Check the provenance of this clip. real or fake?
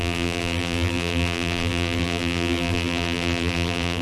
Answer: fake